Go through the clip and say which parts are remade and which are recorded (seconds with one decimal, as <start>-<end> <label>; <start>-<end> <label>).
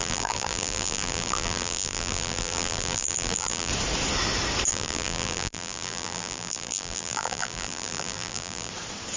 0.0-3.7 remade; 3.7-4.7 recorded; 4.7-8.7 remade; 8.7-9.2 recorded